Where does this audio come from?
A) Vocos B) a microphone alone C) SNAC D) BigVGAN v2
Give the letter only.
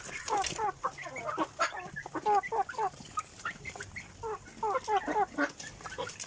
B